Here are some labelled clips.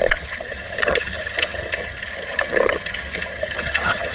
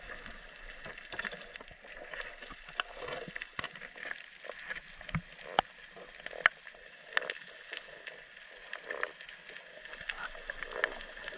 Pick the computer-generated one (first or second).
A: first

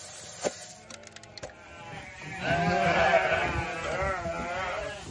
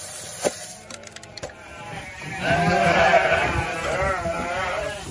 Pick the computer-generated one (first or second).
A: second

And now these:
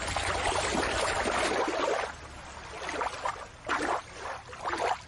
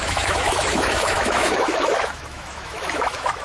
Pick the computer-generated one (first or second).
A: second